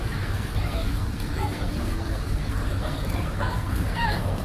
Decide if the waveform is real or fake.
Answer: fake